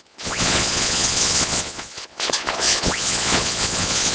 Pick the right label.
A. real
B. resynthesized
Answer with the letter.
B